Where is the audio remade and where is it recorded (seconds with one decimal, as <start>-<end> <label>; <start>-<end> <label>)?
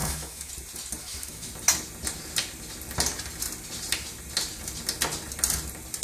0.0-0.5 remade; 0.5-1.0 recorded; 1.0-1.5 remade; 1.5-6.0 recorded